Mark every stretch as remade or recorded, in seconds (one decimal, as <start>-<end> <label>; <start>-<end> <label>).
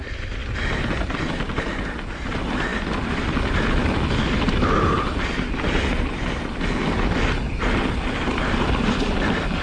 0.0-9.6 recorded